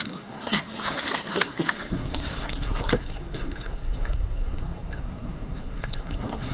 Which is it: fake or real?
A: fake